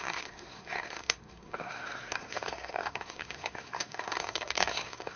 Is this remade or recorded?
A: remade